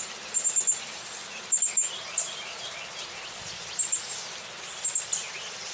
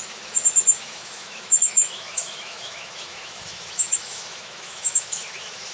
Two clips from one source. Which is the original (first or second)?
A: first